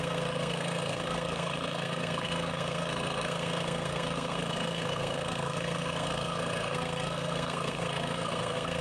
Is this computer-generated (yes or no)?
yes